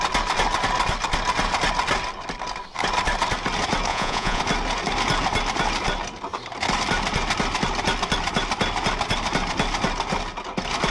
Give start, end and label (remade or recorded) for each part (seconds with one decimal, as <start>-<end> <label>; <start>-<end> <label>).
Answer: 0.0-3.9 recorded; 3.9-4.4 remade; 4.4-10.9 recorded